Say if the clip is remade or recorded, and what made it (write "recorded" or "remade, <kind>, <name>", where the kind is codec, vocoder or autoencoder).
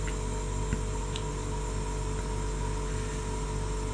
recorded